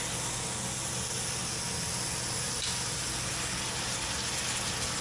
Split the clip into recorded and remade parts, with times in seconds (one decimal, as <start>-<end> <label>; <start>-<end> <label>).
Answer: 0.0-5.0 recorded